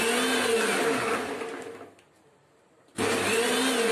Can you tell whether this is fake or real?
real